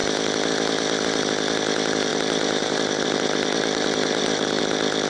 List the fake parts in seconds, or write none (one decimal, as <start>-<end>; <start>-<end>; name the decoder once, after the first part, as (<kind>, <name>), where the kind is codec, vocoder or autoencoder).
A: 2.1-4.6 (vocoder, BigVGAN v2)